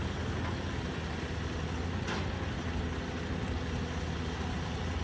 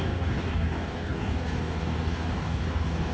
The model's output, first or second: second